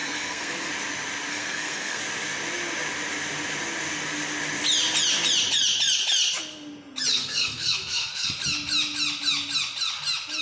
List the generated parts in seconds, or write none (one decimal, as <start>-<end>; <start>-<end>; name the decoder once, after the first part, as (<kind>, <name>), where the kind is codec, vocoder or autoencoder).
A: 0.0-0.7 (codec, SNAC); 1.3-2.0; 7.1-8.3

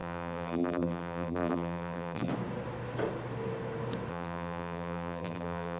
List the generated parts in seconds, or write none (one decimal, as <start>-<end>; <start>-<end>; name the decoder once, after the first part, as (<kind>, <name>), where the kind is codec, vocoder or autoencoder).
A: 0.0-2.3 (vocoder, BigVGAN v2); 4.1-5.8

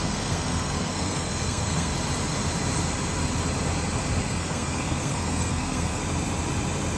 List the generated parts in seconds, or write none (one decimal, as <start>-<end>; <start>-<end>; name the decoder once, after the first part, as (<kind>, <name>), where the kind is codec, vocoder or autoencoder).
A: 0.0-1.9 (codec, SNAC); 4.2-6.0

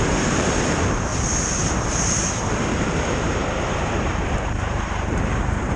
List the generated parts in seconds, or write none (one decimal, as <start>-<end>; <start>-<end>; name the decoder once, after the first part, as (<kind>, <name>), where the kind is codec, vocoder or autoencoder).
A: 0.0-1.1 (vocoder, BigVGAN v2); 3.0-5.8